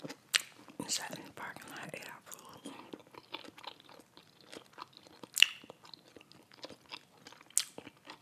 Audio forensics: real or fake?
real